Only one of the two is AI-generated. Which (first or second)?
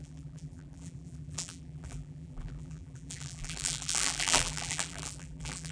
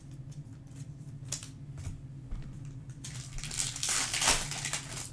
first